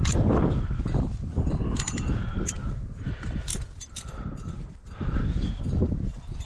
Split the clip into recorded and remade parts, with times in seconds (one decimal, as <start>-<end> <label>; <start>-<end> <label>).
0.0-1.3 recorded; 1.3-2.1 remade; 2.1-3.5 recorded; 3.5-4.9 remade; 4.9-6.5 recorded